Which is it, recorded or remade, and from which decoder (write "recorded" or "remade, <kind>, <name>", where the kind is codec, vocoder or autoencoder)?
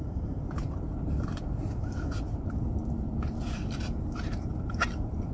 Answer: remade, vocoder, BigVGAN v2